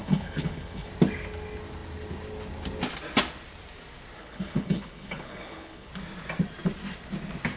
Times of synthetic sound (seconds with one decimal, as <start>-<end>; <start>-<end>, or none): 0.0-0.9; 4.2-5.9